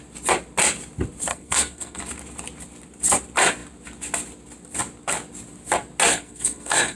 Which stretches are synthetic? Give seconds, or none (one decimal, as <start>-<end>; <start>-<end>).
1.3-2.0; 6.1-7.0